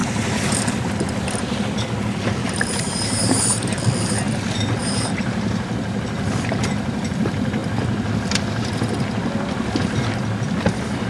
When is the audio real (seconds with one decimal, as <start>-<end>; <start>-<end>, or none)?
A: 0.6-2.4; 3.8-4.8; 5.5-11.1